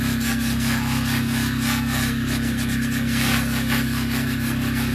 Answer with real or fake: fake